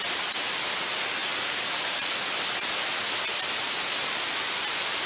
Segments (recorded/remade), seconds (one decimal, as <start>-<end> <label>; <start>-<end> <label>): 0.0-5.1 recorded